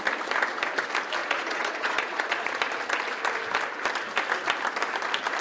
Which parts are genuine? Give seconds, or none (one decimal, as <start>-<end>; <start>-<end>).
0.0-1.2; 2.6-5.4